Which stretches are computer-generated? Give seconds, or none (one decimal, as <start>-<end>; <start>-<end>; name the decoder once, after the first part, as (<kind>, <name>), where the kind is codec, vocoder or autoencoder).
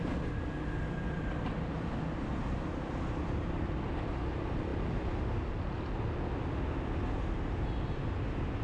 none